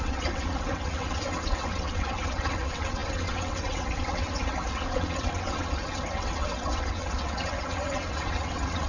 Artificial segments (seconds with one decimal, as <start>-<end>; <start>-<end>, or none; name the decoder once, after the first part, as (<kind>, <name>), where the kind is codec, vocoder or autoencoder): 0.0-8.9 (vocoder, WaveNeXt)